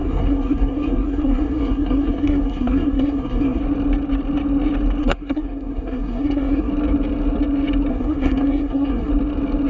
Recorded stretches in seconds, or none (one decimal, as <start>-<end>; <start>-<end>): 3.6-5.0; 6.7-7.9; 9.1-9.7